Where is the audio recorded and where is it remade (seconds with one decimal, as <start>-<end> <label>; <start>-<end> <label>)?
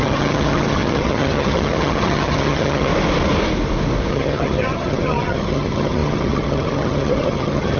0.0-2.9 remade; 2.9-4.1 recorded; 4.1-7.8 remade